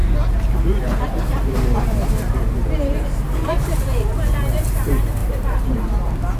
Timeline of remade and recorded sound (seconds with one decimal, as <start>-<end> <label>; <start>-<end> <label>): 0.0-3.8 remade; 3.8-5.2 recorded; 5.2-6.4 remade